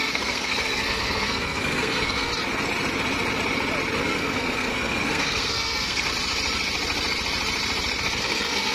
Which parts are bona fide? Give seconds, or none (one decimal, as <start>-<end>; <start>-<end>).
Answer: 2.3-4.0; 6.1-8.2